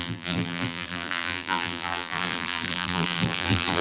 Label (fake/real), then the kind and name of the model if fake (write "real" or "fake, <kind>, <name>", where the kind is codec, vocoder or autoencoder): fake, vocoder, BigVGAN v2